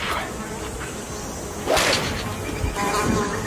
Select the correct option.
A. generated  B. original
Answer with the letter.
B